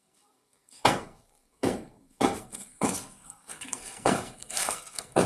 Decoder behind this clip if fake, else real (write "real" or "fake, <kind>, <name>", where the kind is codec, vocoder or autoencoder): fake, codec, SNAC